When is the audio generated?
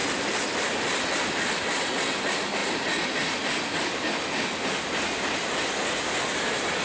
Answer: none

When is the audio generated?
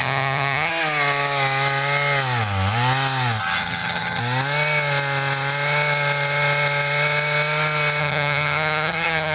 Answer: 0.0-0.7 (vocoder, HiFi-GAN); 3.4-4.2; 8.0-9.3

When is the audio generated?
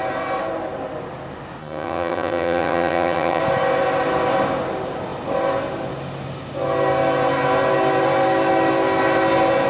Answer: 1.6-3.4 (vocoder, HiFi-GAN)